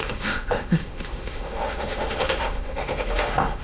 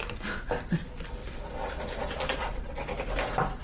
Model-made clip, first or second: first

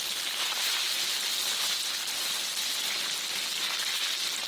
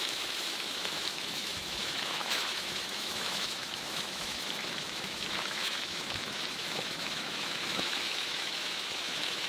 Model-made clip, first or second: second